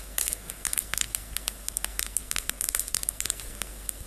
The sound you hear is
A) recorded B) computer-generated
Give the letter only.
B